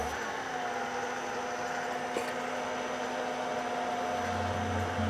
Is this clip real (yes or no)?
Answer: yes